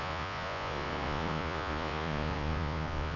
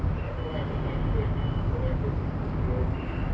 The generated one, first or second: first